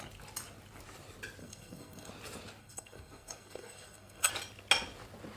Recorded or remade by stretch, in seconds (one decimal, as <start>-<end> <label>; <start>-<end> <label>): 0.0-1.4 recorded; 1.4-2.1 remade; 2.1-2.6 recorded; 2.6-4.3 remade; 4.3-5.4 recorded